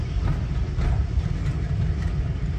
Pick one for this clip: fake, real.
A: real